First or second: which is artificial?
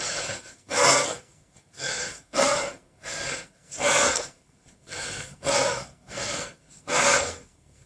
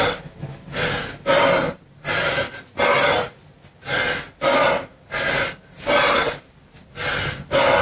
first